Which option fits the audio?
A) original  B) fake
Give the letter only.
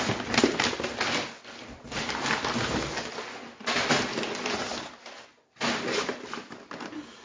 A